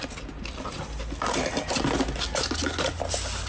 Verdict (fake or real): real